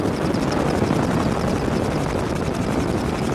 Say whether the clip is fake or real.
real